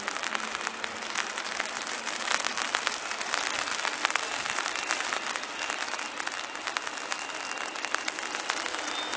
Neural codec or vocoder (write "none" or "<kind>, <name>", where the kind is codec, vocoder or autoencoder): none